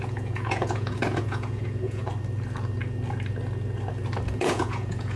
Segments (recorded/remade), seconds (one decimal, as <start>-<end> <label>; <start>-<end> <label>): 0.0-2.0 remade; 2.0-4.3 recorded; 4.3-5.2 remade